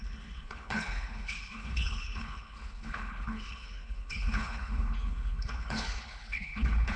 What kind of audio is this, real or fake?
fake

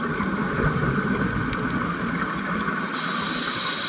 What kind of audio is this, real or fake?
real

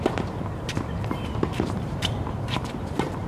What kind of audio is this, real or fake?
fake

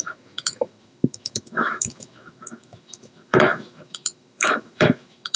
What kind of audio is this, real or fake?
fake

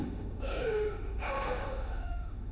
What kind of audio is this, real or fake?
fake